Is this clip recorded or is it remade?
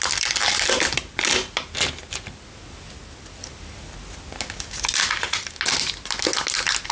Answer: recorded